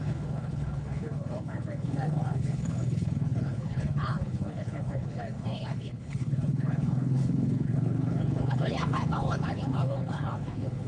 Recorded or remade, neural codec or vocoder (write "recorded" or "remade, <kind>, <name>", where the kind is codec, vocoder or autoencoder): remade, codec, HILCodec